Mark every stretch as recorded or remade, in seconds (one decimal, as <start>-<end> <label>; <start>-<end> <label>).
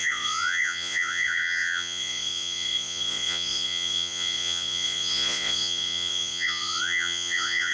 0.0-7.7 remade